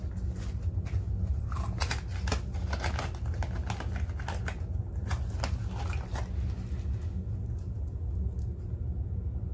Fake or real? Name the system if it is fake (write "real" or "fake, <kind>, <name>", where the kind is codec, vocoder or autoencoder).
real